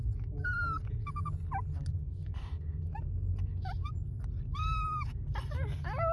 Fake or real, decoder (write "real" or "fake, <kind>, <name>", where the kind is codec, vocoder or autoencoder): real